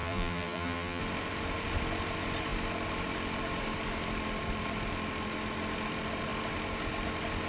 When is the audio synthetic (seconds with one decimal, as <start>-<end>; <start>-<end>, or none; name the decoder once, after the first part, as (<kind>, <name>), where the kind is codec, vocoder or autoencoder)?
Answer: 0.0-1.0 (vocoder, BigVGAN v2)